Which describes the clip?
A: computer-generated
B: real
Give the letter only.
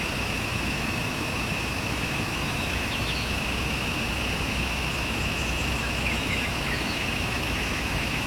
A